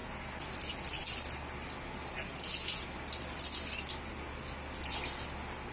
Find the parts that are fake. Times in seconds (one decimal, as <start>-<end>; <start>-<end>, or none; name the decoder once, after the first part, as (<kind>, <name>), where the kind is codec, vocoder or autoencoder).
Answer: none